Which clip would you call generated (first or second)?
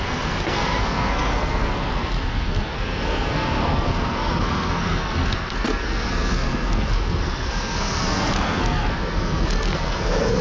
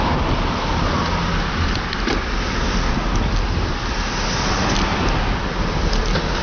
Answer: first